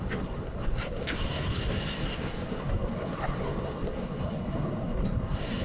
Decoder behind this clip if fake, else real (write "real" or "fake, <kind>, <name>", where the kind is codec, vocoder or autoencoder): fake, codec, SNAC